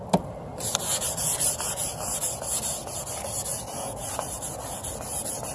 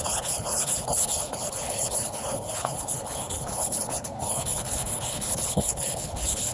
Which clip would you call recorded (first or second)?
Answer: first